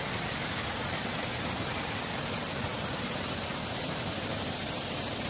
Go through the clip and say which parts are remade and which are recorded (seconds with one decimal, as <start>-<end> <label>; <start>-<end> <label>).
0.0-5.3 recorded